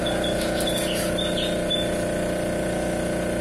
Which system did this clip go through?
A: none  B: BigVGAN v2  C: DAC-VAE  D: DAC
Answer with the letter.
A